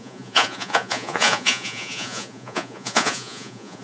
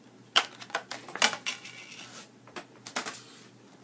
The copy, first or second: first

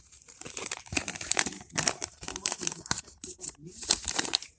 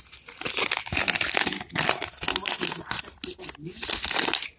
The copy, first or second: first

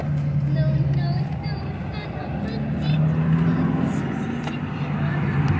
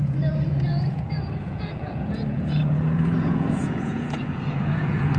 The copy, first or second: second